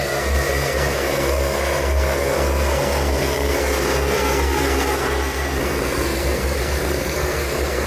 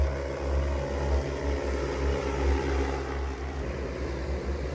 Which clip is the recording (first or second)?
second